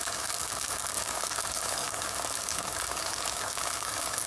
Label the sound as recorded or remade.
remade